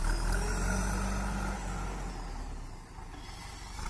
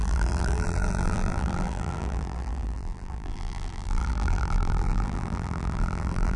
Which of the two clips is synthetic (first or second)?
second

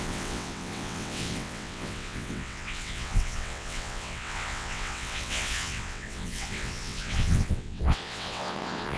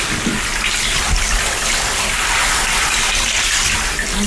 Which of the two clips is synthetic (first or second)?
first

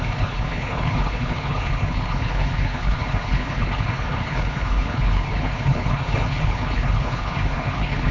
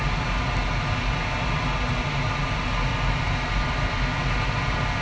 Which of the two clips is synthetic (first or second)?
first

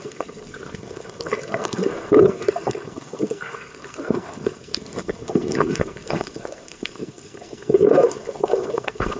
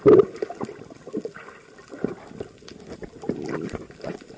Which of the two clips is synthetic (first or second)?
first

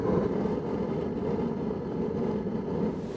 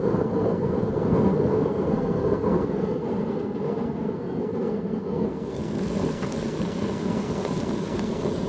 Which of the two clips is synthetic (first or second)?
second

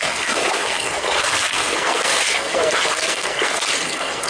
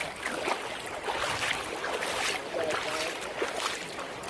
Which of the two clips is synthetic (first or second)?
first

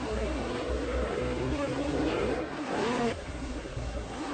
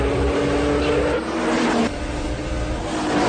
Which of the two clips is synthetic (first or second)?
first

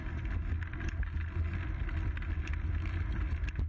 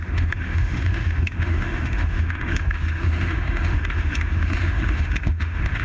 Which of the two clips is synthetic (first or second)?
second